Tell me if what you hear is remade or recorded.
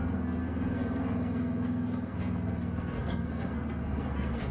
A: remade